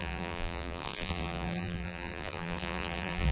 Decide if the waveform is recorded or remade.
remade